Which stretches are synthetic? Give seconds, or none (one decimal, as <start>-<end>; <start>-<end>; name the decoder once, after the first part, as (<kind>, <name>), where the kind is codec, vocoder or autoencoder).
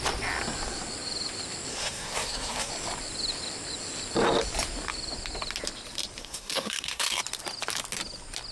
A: 1.7-2.7 (codec, SNAC); 6.2-7.2